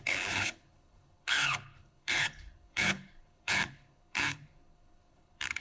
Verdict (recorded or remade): remade